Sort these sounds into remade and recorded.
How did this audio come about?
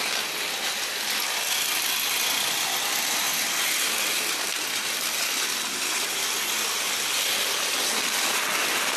recorded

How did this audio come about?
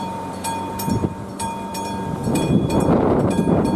remade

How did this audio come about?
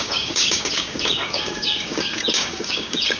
remade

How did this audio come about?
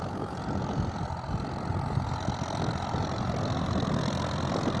recorded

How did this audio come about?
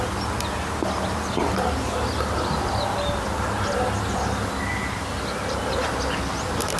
recorded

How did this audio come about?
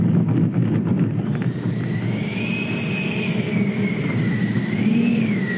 recorded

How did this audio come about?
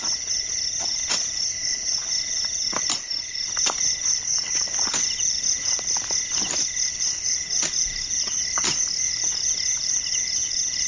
recorded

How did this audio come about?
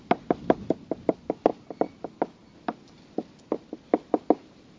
recorded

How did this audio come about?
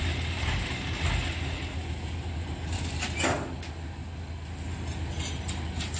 recorded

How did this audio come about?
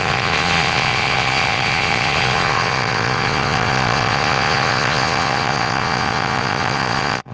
remade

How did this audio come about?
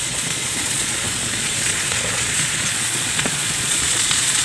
remade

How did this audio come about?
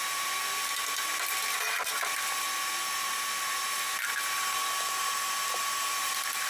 recorded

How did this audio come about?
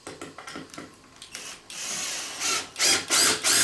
recorded